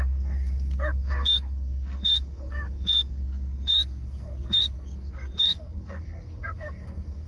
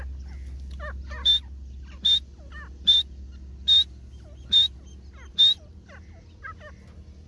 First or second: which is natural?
second